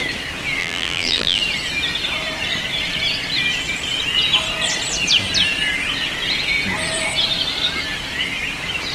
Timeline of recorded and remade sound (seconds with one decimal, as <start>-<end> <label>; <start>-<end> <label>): 0.0-0.6 recorded; 0.6-1.4 remade; 1.4-8.9 recorded